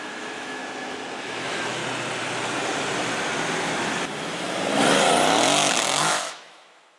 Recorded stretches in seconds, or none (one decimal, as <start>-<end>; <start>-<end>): 0.6-1.2; 1.8-6.0